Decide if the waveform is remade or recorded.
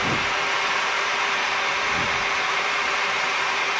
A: remade